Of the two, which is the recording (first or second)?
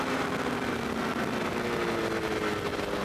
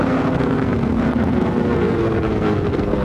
first